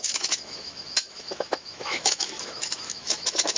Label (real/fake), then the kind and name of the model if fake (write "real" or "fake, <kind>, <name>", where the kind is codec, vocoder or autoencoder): fake, autoencoder, DAC-VAE